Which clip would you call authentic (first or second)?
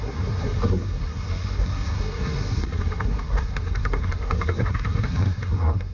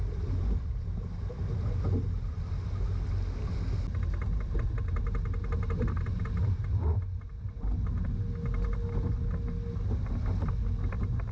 second